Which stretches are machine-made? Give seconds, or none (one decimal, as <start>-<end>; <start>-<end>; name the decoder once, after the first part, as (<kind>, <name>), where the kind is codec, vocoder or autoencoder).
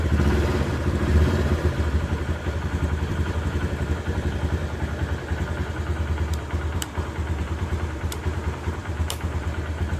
0.0-4.6 (vocoder, BigVGAN v2); 7.4-10.0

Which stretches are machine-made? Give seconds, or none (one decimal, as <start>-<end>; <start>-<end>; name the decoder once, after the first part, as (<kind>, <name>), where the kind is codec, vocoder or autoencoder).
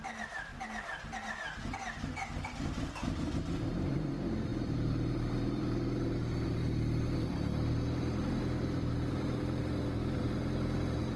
0.0-11.2 (vocoder, BigVGAN v2)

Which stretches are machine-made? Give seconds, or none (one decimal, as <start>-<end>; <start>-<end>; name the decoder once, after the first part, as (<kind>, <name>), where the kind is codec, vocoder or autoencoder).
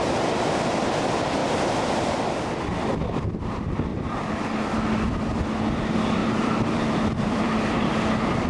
1.4-2.1 (vocoder, BigVGAN v2); 3.9-4.7; 6.2-7.9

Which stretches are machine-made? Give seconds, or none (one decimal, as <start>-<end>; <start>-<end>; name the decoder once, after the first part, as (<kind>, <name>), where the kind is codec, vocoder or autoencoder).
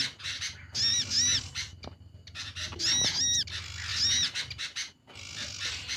none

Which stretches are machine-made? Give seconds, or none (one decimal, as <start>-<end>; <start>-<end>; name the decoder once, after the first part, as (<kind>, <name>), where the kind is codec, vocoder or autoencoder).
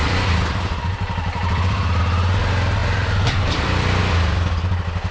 0.0-2.0 (vocoder, BigVGAN v2); 2.8-4.0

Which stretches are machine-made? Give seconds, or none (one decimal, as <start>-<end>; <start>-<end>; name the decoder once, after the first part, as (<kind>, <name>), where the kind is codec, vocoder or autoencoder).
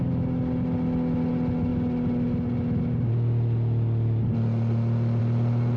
none